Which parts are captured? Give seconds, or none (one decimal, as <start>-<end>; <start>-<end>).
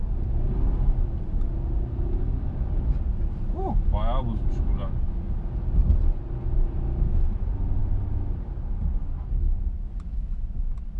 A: 3.8-11.0